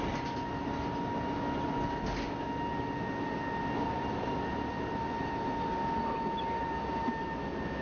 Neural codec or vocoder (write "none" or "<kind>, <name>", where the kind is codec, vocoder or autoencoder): none